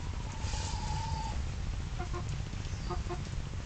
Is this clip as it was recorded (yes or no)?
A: yes